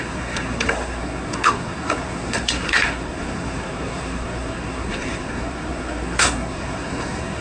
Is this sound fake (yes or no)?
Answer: yes